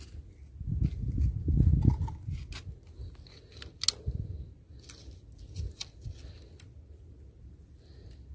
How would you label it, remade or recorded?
recorded